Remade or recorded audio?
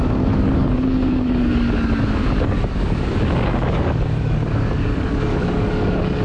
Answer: remade